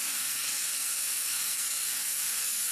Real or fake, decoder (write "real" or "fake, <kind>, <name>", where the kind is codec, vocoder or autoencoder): fake, codec, SNAC